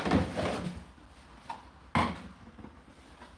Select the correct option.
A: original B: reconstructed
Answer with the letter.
A